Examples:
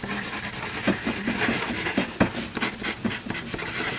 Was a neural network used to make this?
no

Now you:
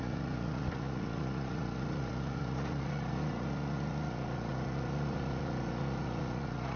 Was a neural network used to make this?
yes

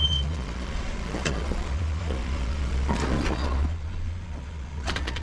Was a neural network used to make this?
yes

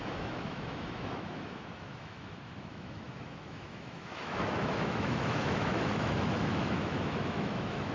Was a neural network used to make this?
yes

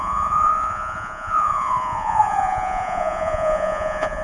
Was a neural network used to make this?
yes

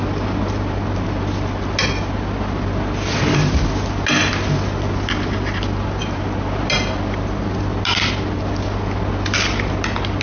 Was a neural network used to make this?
no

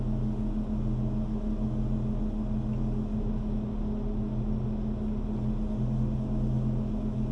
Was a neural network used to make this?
no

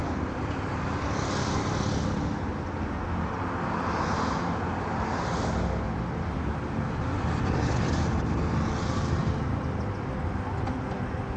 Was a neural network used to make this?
no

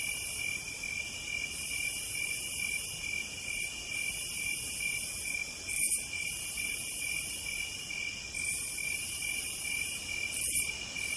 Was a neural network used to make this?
no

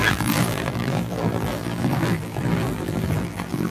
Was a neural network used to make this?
yes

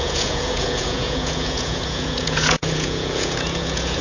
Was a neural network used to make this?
yes